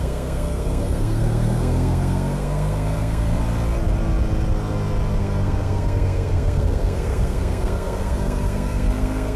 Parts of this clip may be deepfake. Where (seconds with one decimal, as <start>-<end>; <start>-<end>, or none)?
0.0-3.4; 5.2-9.4